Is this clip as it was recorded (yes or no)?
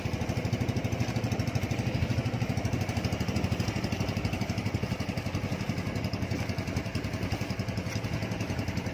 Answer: yes